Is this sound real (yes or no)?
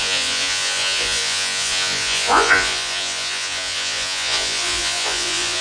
no